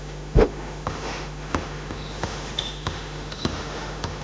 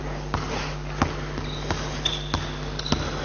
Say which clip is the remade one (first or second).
first